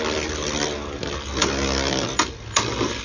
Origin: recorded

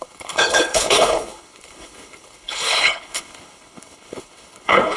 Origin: remade